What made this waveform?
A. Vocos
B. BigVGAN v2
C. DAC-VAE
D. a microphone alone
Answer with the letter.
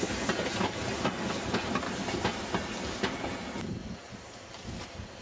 D